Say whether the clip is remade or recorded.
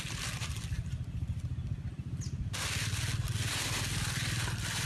recorded